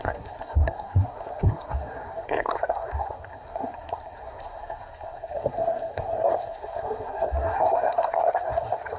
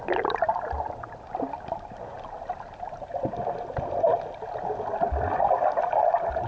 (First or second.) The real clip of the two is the second